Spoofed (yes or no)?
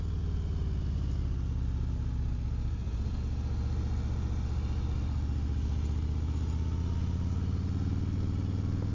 no